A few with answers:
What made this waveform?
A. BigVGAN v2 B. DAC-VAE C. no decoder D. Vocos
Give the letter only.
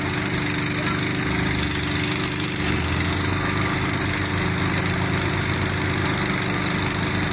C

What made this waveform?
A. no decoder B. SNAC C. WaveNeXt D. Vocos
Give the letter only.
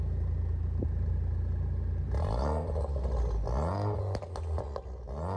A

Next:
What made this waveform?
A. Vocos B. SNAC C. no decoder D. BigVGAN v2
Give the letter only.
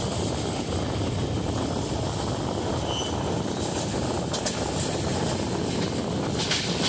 C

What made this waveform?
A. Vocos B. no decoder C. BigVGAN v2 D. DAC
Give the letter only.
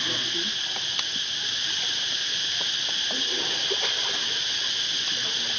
B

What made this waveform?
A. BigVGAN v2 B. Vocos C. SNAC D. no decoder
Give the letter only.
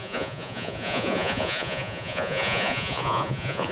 B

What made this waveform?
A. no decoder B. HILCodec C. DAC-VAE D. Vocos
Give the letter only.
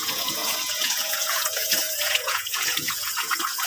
D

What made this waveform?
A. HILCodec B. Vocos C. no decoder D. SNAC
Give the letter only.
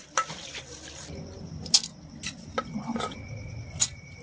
C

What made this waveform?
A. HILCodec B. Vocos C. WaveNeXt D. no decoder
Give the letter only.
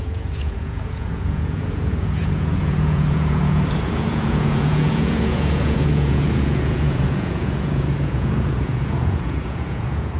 B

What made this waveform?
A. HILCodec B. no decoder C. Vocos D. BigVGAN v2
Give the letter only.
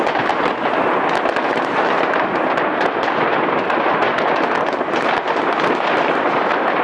B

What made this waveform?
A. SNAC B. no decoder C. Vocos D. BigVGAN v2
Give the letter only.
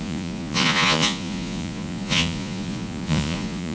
C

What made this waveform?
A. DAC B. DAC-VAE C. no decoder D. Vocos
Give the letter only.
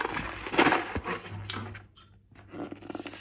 C